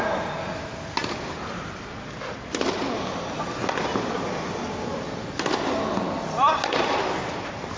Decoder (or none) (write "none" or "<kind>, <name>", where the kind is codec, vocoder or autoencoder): none